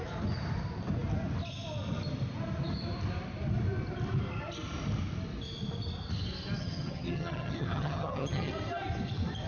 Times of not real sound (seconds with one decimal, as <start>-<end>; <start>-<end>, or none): 6.6-8.5